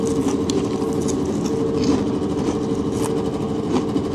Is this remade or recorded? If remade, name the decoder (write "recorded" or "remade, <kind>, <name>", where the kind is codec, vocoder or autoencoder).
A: recorded